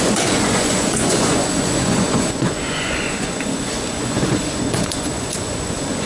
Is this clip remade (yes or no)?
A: yes